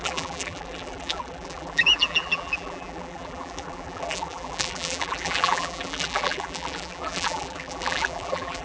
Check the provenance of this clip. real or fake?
fake